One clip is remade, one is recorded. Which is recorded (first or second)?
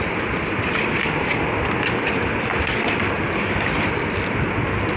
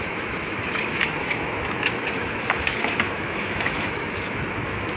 first